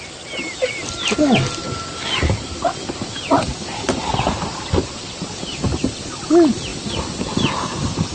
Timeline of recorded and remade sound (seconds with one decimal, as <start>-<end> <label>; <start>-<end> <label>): 0.0-8.1 recorded